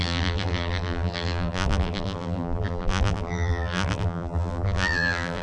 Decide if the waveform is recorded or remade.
remade